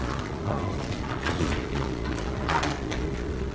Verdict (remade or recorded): remade